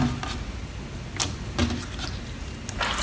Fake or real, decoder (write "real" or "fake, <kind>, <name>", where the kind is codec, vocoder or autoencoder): real